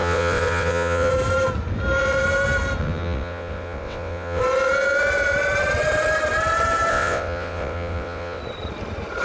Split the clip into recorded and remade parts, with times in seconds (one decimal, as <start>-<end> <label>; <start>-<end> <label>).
0.0-1.1 remade; 1.1-2.8 recorded; 2.8-4.4 remade; 4.4-6.9 recorded; 6.9-8.4 remade; 8.4-9.2 recorded